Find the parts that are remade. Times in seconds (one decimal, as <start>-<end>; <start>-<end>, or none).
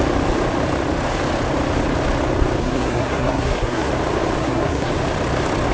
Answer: 2.6-3.9; 4.4-4.9